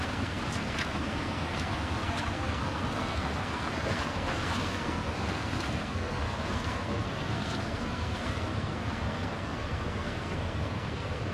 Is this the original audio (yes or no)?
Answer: no